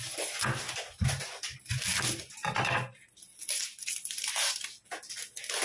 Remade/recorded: recorded